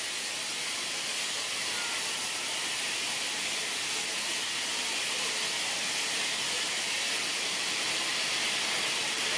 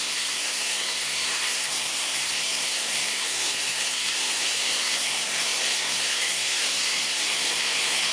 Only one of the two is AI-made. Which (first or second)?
second